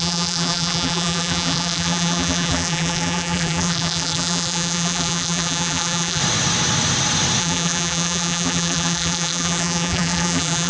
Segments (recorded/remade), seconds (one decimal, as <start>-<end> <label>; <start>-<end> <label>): 0.0-6.2 remade; 6.2-7.4 recorded; 7.4-10.7 remade